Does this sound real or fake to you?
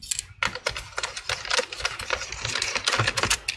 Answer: real